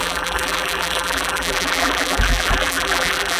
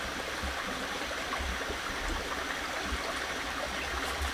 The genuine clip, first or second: second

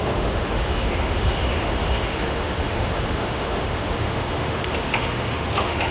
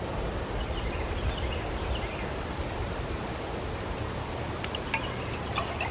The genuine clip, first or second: second